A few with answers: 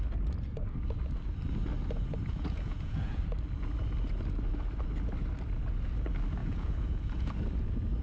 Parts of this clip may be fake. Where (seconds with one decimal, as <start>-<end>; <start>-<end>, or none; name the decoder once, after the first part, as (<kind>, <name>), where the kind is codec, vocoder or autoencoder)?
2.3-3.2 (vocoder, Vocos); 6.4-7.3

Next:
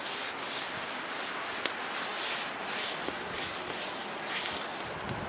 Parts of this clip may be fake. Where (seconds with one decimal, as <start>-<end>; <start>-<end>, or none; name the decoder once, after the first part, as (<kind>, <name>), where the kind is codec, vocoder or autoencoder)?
none

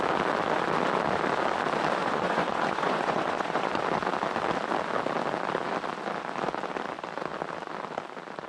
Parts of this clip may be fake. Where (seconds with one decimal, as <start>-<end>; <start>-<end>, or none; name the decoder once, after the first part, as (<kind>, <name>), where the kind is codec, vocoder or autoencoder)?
2.0-3.8 (vocoder, Vocos)

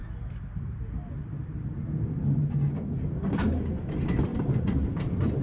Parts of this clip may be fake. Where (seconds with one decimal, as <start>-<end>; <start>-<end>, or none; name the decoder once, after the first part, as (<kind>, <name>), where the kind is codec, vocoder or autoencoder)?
none

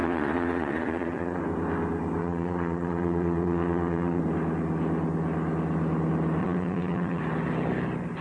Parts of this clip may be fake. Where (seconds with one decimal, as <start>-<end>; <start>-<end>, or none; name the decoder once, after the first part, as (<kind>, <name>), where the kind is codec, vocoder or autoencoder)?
0.0-1.4 (vocoder, Vocos); 2.2-4.2; 6.4-7.2

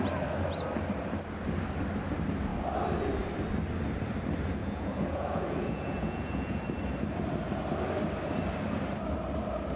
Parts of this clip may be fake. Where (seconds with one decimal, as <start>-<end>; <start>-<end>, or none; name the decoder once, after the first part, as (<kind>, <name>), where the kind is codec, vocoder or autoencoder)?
4.6-6.6 (vocoder, Vocos)